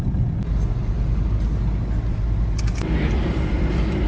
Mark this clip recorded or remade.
recorded